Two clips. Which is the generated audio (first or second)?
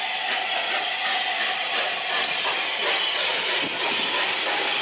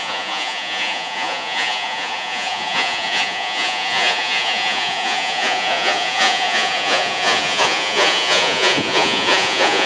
second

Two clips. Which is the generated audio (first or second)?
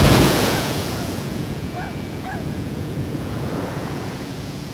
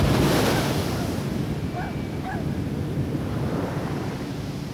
first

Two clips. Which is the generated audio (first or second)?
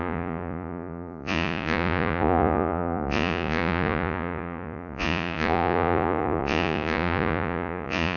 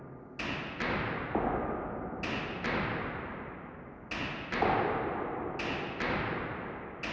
first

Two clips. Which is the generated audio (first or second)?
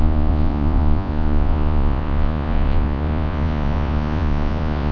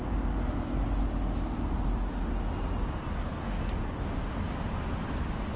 first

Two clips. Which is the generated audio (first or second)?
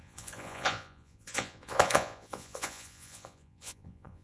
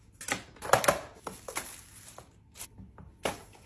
first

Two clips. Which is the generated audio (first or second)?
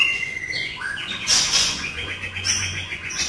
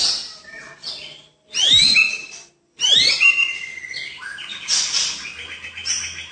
first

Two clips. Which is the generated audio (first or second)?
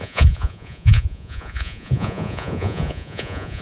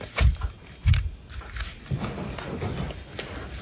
first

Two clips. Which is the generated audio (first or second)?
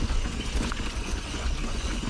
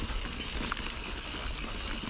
first